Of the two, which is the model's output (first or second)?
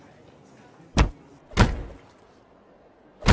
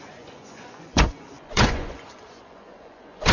second